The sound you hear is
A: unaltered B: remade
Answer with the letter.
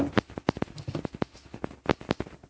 A